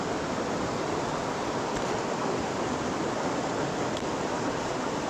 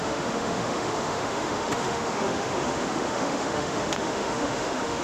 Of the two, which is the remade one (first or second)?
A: second